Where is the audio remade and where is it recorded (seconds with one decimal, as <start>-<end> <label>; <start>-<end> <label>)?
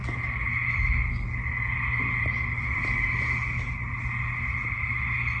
0.0-5.4 recorded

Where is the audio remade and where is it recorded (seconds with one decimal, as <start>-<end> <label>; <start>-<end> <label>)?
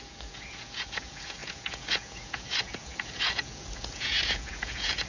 0.0-5.1 remade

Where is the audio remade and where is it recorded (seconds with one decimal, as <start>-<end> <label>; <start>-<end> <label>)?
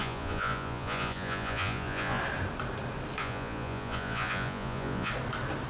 0.0-2.2 remade; 2.2-3.2 recorded; 3.2-5.1 remade; 5.1-5.7 recorded